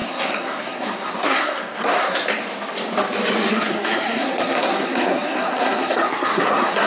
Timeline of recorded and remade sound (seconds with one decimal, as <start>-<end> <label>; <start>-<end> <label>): 0.0-2.2 remade; 2.2-3.5 recorded; 3.5-6.9 remade